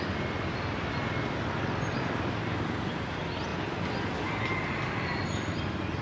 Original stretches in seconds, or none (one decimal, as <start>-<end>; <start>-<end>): 0.0-3.5; 4.3-6.0

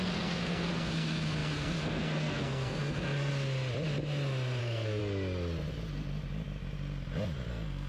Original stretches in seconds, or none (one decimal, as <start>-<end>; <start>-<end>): 3.3-4.6; 5.0-7.5

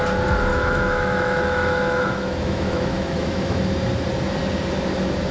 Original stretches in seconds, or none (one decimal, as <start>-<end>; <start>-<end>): 0.0-0.5; 3.6-5.3

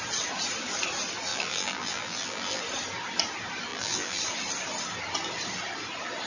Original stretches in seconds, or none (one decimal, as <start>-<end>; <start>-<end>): 0.0-1.3; 2.6-3.7; 4.2-6.3

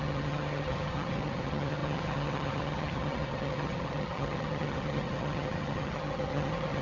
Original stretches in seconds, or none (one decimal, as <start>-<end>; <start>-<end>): none